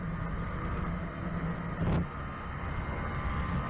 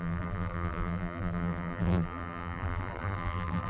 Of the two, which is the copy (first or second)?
second